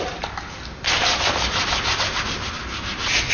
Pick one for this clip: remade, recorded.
recorded